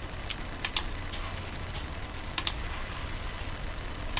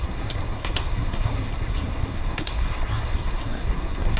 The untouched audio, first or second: first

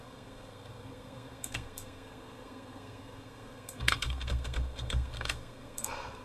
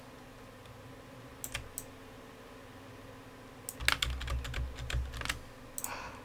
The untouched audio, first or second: second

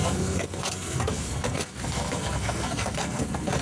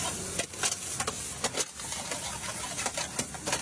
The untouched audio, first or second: second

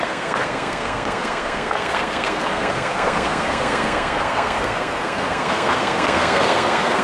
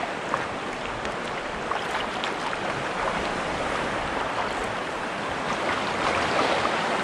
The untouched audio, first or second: second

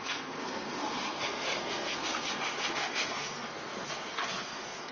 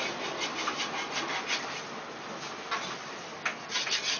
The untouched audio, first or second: second